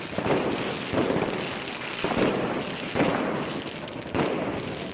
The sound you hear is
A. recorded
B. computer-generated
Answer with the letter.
A